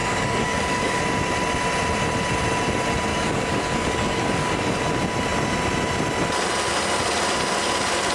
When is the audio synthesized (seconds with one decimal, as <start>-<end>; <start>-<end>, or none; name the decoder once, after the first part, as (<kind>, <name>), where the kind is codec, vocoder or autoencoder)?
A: 0.0-1.0 (codec, DAC); 3.1-4.8